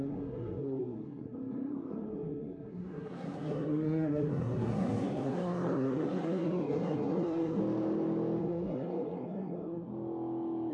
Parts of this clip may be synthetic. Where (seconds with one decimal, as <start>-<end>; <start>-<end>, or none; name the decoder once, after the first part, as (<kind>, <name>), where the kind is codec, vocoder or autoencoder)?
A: 0.0-7.6 (codec, SNAC); 8.4-9.9

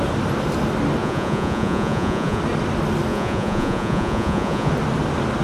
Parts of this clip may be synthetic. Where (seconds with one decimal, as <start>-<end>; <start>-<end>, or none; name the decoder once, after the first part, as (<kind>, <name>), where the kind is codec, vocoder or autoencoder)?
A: 1.0-2.4 (vocoder, Vocos); 3.1-4.7

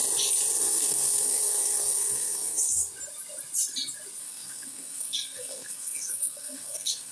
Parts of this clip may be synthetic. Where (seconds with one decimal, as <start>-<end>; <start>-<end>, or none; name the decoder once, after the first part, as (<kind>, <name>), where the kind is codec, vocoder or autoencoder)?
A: 0.6-2.8 (codec, SNAC); 4.2-7.1

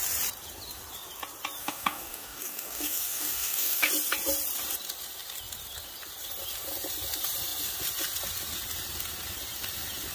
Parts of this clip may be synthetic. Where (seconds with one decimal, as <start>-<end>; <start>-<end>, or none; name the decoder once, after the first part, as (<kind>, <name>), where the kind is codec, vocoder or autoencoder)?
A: 1.6-3.9 (codec, DAC)

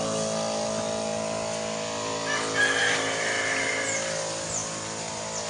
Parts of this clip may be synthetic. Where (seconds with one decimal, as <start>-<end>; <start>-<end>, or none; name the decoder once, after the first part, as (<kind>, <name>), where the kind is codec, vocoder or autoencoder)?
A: none

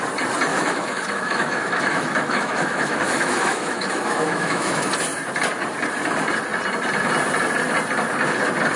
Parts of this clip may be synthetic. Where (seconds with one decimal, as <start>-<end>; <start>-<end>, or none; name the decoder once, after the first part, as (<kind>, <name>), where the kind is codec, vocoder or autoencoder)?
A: 0.5-4.9 (autoencoder, DAC-VAE)